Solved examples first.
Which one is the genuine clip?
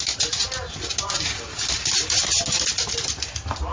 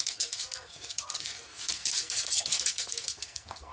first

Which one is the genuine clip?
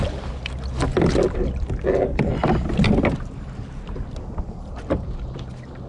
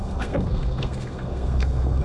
first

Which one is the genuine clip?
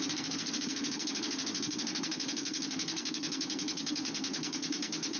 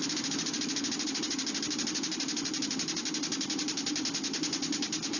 second